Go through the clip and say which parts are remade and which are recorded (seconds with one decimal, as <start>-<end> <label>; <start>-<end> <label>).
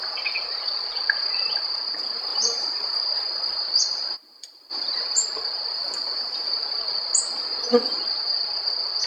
0.0-2.3 recorded; 2.3-3.2 remade; 3.2-9.1 recorded